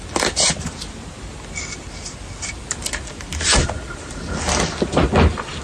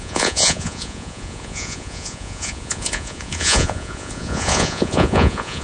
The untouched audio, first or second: first